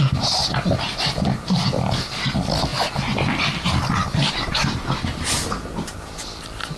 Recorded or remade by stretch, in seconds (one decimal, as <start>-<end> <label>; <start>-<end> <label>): 0.0-6.8 recorded